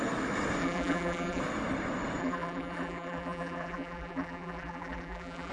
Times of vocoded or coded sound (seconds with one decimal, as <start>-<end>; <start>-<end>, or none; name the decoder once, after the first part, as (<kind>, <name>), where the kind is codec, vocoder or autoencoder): 0.6-1.4 (vocoder, BigVGAN v2); 2.2-5.5